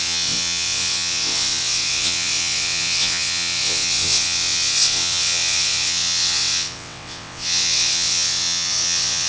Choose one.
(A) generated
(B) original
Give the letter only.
A